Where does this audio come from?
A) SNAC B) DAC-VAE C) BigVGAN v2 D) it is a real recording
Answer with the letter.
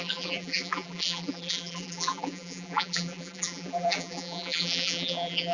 C